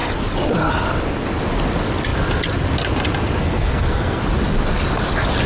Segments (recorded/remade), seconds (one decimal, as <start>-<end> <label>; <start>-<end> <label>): 0.0-3.4 recorded; 3.4-4.2 remade; 4.2-5.5 recorded